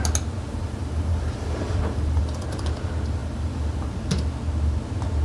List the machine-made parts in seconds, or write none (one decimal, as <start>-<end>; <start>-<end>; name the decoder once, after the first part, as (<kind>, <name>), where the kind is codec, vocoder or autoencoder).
0.5-2.2 (vocoder, BigVGAN v2); 3.2-3.9